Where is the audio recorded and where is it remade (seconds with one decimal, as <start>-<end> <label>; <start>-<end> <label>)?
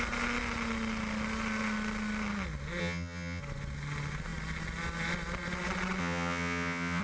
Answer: 0.0-2.8 recorded; 2.8-3.4 remade; 3.4-6.0 recorded; 6.0-7.0 remade